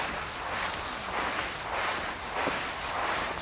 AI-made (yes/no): no